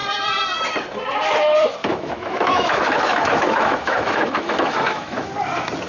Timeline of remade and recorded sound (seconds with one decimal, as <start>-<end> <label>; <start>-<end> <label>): 0.0-1.8 recorded; 1.8-5.3 remade; 5.3-5.9 recorded